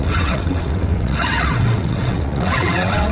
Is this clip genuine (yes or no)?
no